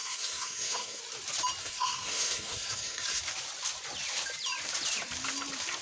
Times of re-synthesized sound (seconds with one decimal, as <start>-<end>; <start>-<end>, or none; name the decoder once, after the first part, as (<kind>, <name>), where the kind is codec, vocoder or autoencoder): 0.0-1.0 (codec, SNAC); 1.6-3.2